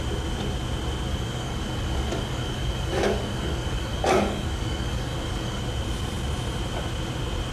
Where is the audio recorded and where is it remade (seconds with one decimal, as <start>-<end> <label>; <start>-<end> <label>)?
0.0-1.1 recorded; 1.1-5.6 remade; 5.6-7.5 recorded